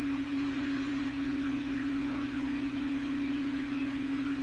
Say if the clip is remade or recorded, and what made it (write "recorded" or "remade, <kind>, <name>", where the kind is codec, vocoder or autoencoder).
remade, vocoder, Vocos